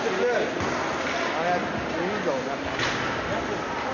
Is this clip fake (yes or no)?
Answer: no